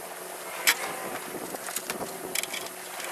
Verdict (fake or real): real